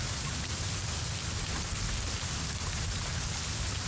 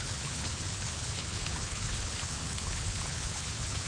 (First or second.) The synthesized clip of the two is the second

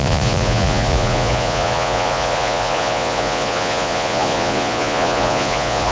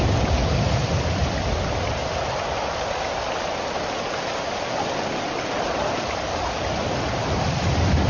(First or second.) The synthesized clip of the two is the first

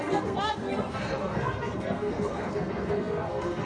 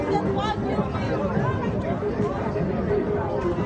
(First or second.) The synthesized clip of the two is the first